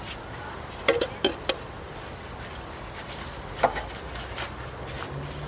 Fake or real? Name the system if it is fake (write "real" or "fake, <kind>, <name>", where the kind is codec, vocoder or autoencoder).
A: real